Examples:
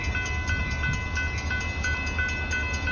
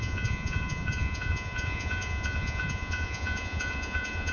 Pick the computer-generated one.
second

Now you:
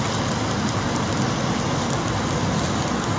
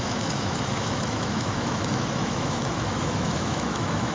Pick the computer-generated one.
second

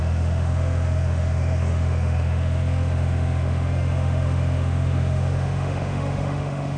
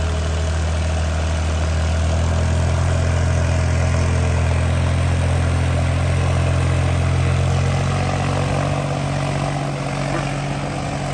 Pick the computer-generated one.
first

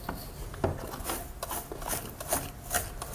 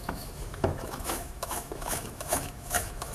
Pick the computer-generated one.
second